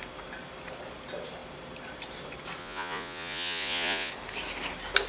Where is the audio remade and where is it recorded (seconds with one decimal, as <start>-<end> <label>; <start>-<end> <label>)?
0.0-2.6 recorded; 2.6-4.1 remade; 4.1-5.1 recorded